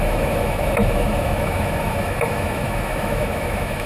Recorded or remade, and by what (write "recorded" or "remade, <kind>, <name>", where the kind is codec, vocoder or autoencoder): remade, autoencoder, DAC-VAE